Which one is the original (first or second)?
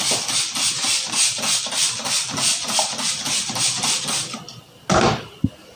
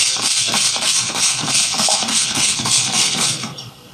first